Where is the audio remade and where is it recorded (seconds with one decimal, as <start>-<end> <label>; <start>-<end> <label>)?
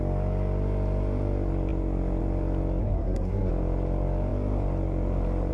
0.0-2.8 recorded; 2.8-3.5 remade; 3.5-5.5 recorded